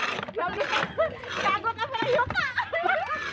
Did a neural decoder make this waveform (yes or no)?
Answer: no